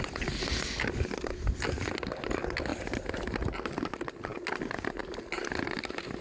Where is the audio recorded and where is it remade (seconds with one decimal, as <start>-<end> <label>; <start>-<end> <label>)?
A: 0.0-6.2 recorded

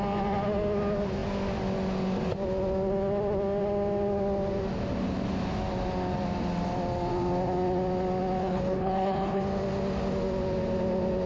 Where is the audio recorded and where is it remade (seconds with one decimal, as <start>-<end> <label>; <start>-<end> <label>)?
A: 0.0-8.4 recorded; 8.4-9.4 remade; 9.4-11.3 recorded

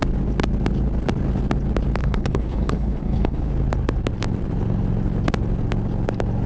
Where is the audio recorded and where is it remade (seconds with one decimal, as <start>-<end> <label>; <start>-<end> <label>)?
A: 0.0-2.0 recorded; 2.0-3.5 remade; 3.5-6.5 recorded

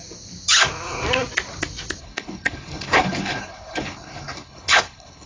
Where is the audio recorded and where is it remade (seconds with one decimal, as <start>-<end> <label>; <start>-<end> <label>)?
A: 0.0-2.0 recorded; 2.0-5.3 remade

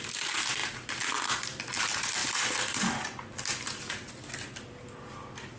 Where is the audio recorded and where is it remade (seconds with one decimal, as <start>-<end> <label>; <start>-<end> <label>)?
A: 0.0-5.6 recorded

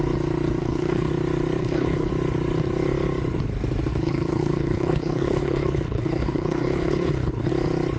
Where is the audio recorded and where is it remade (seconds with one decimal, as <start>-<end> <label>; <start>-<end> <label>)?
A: 0.0-0.6 recorded; 0.6-1.1 remade; 1.1-1.6 recorded; 1.6-2.1 remade; 2.1-3.9 recorded; 3.9-7.5 remade; 7.5-8.0 recorded

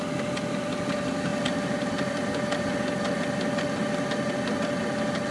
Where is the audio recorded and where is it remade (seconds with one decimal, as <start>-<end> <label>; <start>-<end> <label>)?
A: 0.0-5.3 recorded